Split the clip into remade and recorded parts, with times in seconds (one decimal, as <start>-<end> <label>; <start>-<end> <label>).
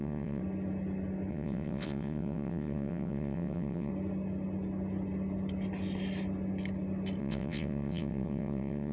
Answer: 0.0-0.4 remade; 0.4-1.3 recorded; 1.3-3.9 remade; 3.9-7.2 recorded; 7.2-8.9 remade